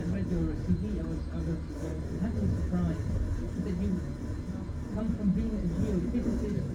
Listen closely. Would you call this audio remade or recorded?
recorded